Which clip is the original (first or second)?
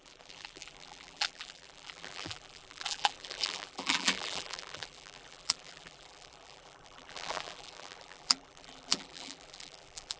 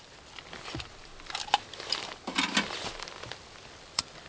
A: second